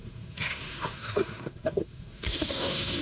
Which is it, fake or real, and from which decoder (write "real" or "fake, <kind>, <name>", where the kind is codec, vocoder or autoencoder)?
fake, codec, SNAC